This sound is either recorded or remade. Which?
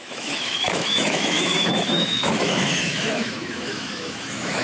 remade